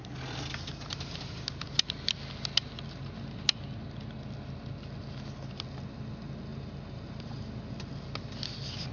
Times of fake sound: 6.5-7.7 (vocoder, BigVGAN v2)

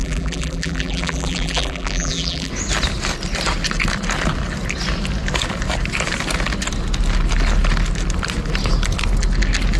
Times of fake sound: 0.0-2.5 (vocoder, BigVGAN v2)

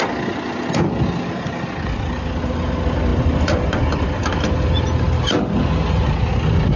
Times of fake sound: 3.1-4.2 (vocoder, BigVGAN v2)